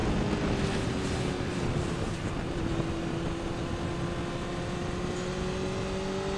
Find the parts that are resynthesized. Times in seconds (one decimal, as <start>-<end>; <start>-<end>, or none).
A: none